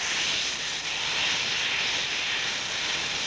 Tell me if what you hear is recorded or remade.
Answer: remade